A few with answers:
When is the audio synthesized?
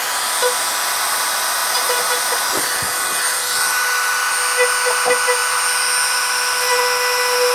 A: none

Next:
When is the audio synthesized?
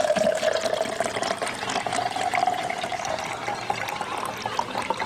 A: 1.9-3.2 (vocoder, BigVGAN v2)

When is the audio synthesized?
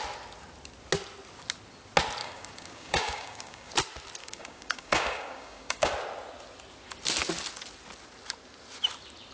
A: 2.2-3.7 (codec, DAC); 4.2-5.9